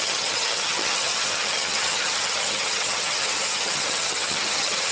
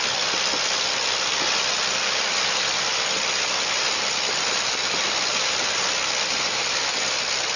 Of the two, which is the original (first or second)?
second